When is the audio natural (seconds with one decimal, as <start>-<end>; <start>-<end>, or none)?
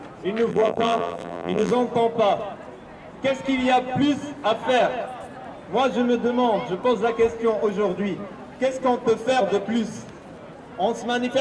0.0-0.5; 1.7-11.4